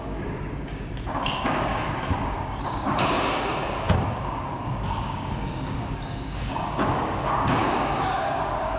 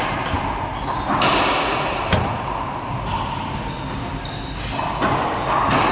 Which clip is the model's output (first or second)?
first